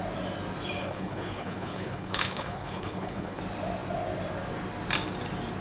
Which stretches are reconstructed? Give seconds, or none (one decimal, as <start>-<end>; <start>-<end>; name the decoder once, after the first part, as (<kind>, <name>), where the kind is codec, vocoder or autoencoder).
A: 0.8-3.4 (codec, HILCodec)